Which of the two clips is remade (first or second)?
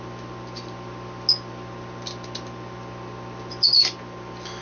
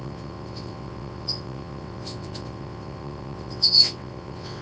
second